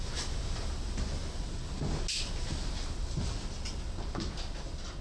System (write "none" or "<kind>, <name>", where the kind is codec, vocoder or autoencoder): none